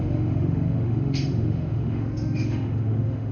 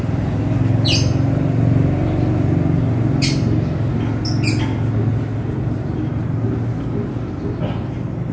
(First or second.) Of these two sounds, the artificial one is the first